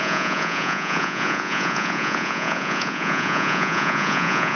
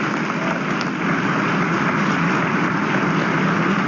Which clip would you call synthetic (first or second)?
first